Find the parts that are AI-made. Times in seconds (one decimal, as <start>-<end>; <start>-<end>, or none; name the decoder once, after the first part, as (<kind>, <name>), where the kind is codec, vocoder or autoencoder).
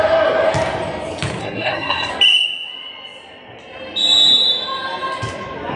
1.4-2.1 (codec, SNAC)